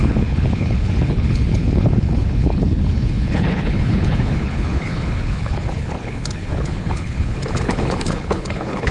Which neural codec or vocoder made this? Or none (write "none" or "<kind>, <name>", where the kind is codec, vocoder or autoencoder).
codec, HILCodec